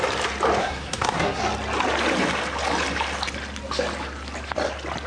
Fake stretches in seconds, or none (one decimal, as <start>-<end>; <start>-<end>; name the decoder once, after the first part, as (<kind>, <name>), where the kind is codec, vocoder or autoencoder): 0.6-1.4 (codec, SNAC)